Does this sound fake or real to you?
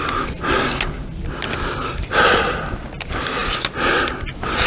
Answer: real